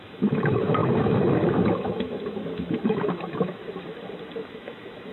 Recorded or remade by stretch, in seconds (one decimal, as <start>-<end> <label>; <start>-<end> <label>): 0.0-3.6 remade; 3.6-4.5 recorded; 4.5-5.1 remade